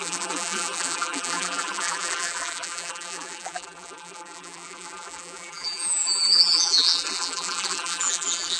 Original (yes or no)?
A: no